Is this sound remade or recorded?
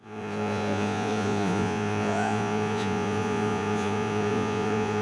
remade